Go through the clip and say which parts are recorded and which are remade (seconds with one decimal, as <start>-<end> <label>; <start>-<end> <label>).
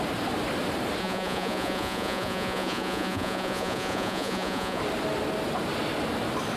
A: 0.0-1.0 recorded; 1.0-4.8 remade; 4.8-6.6 recorded